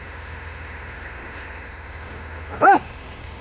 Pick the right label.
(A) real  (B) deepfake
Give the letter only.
B